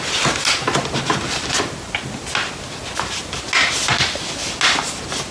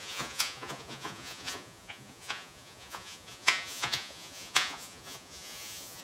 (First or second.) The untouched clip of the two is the first